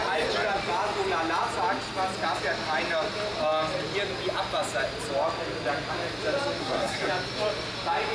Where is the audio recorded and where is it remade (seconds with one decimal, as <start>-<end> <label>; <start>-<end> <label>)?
0.0-6.6 recorded; 6.6-7.1 remade; 7.1-8.1 recorded